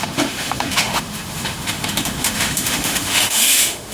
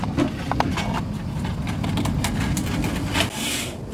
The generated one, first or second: first